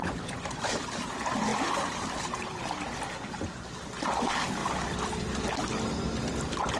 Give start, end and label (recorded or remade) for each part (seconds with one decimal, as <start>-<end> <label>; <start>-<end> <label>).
0.0-0.6 remade; 0.6-6.8 recorded